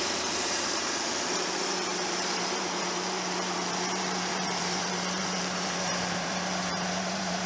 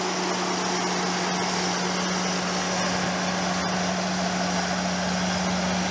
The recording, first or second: second